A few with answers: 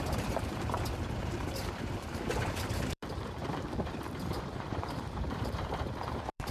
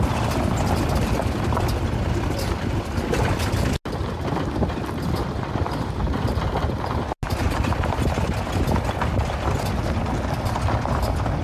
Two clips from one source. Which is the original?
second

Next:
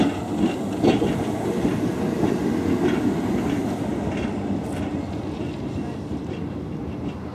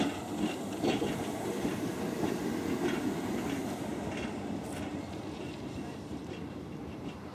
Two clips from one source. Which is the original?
first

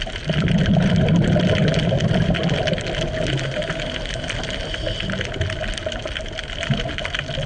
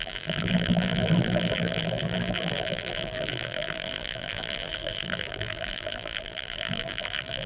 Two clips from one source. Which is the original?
first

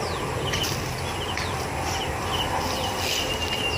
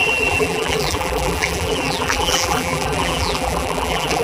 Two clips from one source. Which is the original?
first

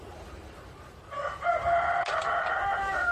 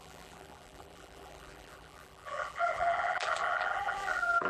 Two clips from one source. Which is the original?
first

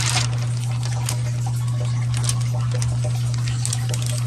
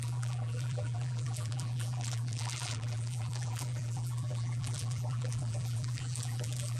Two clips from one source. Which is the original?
first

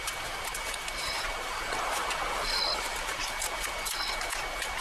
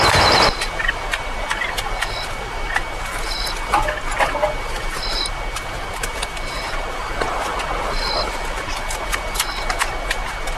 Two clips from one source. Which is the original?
second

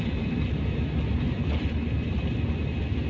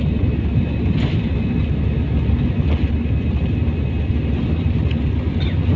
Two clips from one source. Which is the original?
second